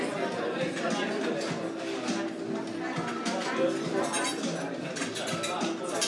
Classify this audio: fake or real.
real